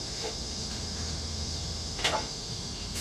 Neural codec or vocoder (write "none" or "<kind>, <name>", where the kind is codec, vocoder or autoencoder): autoencoder, DAC-VAE